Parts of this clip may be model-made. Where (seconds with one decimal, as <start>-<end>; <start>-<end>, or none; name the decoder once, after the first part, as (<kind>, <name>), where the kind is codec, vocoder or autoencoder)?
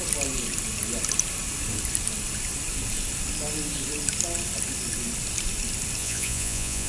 6.0-6.9 (vocoder, Vocos)